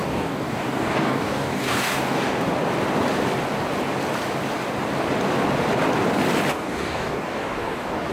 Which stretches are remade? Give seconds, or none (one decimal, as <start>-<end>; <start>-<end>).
0.0-2.5; 6.5-8.1